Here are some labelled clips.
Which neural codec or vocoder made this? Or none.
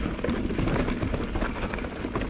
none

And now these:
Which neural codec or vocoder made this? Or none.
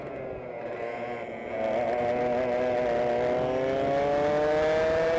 none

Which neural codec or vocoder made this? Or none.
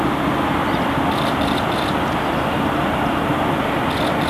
none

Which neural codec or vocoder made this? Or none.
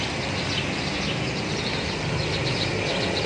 none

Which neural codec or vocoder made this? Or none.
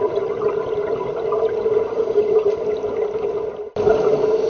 none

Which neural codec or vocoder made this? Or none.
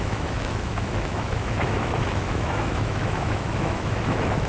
autoencoder, DAC-VAE